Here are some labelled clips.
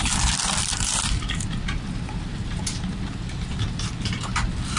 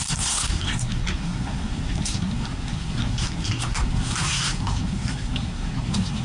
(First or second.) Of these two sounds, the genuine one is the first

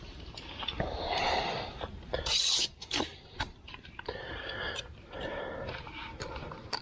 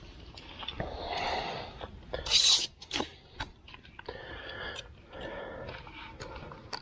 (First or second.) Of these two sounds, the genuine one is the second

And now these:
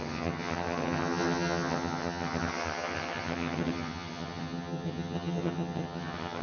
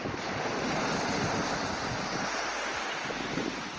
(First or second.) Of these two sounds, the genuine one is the second